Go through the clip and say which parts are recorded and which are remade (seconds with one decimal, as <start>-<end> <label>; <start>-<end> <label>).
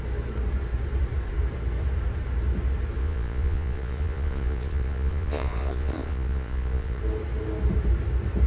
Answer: 0.0-3.0 recorded; 3.0-7.0 remade; 7.0-8.5 recorded